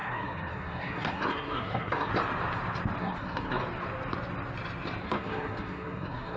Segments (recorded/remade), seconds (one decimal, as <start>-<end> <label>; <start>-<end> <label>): 0.0-2.1 remade; 2.1-3.0 recorded; 3.0-3.6 remade; 3.6-5.0 recorded; 5.0-6.4 remade